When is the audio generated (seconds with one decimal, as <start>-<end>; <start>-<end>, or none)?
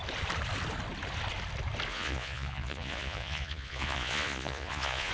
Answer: 1.9-5.1